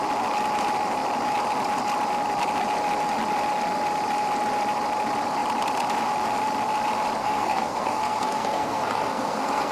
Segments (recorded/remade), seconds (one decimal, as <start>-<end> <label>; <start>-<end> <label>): 0.0-7.2 recorded; 7.2-9.7 remade